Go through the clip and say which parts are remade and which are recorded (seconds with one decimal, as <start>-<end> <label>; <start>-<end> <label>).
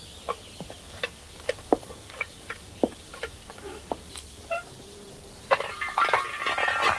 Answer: 0.0-0.8 recorded; 0.8-4.1 remade; 4.1-7.0 recorded